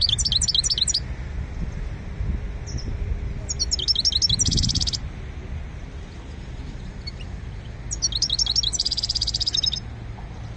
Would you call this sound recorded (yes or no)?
yes